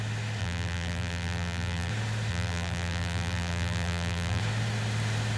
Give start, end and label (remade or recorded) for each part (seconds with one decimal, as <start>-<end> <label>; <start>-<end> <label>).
0.0-0.4 recorded; 0.4-1.9 remade; 1.9-2.3 recorded; 2.3-4.4 remade; 4.4-5.4 recorded